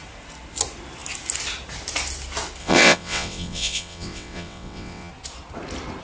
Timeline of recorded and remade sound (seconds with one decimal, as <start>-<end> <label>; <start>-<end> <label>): 0.0-2.6 recorded; 2.6-5.1 remade; 5.1-6.0 recorded